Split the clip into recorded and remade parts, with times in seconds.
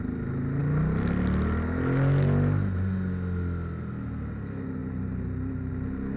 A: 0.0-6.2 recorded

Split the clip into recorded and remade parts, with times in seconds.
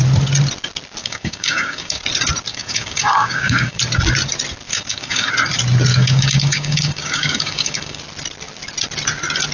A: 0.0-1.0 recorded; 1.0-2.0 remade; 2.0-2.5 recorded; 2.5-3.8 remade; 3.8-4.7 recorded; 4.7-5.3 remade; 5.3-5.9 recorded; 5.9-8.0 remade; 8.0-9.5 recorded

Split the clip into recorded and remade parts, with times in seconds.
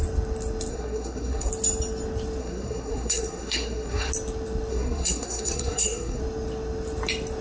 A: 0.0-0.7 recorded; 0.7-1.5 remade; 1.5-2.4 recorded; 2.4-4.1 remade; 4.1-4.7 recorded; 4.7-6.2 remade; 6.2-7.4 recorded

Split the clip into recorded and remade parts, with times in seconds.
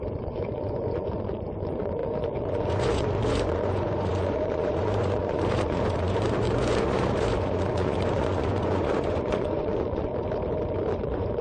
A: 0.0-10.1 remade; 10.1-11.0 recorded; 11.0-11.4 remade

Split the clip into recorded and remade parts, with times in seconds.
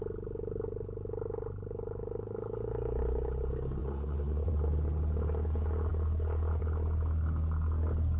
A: 0.0-3.8 recorded; 3.8-4.5 remade; 4.5-8.2 recorded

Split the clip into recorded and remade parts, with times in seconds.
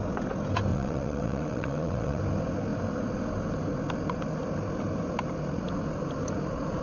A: 0.0-0.7 recorded; 0.7-2.2 remade; 2.2-6.8 recorded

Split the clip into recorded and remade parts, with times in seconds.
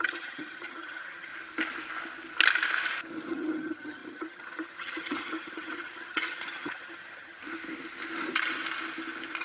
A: 0.0-1.3 remade; 1.3-3.3 recorded; 3.3-7.4 remade; 7.4-9.4 recorded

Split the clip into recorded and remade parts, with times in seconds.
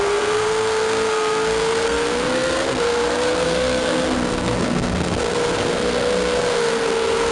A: 0.0-7.3 remade